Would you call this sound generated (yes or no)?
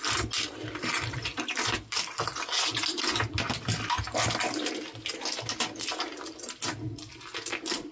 no